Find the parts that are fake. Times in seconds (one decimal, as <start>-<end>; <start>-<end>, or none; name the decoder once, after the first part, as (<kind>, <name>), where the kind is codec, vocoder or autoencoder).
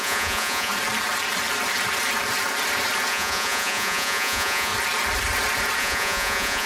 0.0-0.7 (vocoder, Vocos); 3.1-4.7; 5.8-6.7